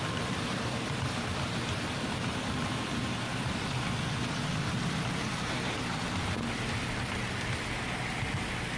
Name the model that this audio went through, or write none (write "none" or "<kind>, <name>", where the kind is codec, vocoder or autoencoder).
none